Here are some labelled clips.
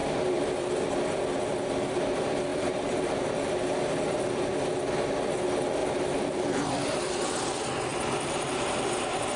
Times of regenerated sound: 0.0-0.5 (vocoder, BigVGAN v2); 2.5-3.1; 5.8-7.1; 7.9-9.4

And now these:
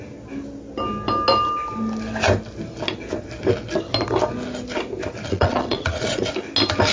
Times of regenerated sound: 5.3-6.2 (vocoder, Vocos)

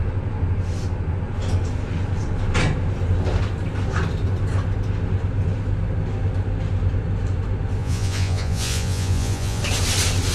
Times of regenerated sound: 7.8-9.6 (vocoder, Vocos)

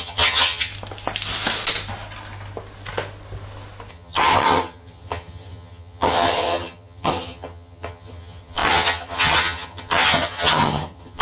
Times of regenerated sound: 0.0-0.7 (vocoder, HiFi-GAN); 3.9-11.2

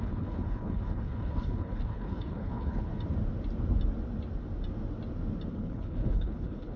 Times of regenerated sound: 0.0-2.9 (codec, HILCodec); 5.5-6.8